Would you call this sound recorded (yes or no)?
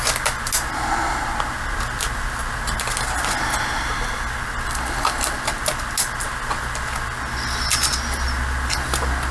yes